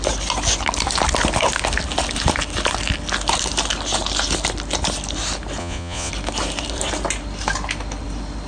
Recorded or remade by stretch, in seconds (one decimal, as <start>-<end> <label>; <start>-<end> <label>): 0.0-5.6 recorded; 5.6-6.1 remade; 6.1-8.5 recorded